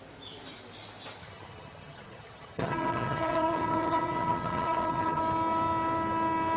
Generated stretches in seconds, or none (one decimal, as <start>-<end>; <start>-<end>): 1.2-5.2